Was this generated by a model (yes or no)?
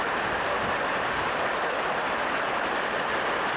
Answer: no